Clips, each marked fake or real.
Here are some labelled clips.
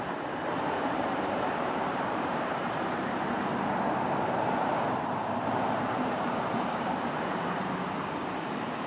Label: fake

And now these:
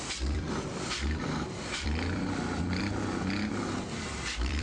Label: fake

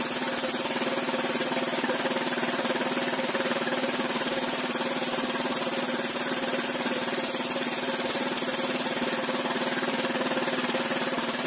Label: fake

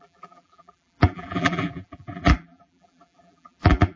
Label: fake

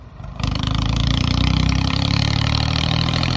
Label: fake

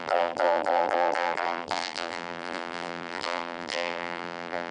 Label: fake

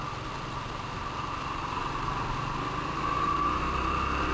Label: real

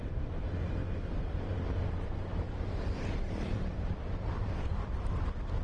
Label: fake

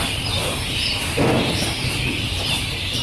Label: real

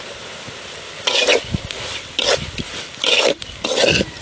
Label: real